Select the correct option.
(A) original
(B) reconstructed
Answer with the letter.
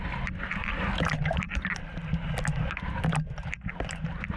A